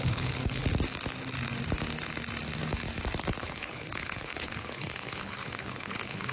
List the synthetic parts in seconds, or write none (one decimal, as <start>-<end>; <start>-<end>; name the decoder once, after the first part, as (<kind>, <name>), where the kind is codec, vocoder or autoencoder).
0.0-0.6 (codec, HILCodec); 3.4-6.3